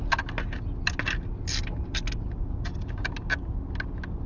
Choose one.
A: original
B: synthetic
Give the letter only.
A